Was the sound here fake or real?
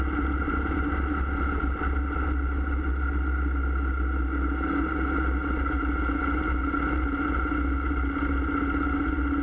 real